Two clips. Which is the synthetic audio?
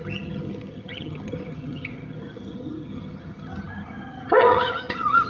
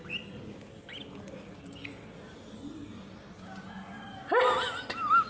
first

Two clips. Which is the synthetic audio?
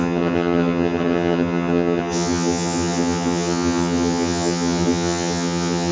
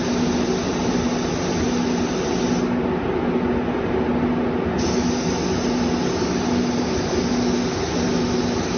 first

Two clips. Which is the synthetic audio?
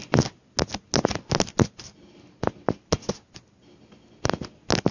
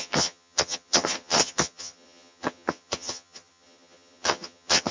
second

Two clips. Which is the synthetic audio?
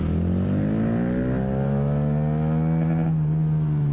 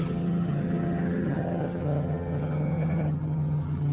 second